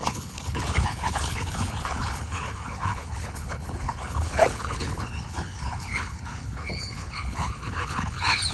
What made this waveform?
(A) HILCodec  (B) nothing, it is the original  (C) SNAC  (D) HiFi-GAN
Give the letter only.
A